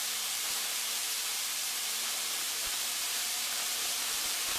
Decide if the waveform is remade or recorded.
remade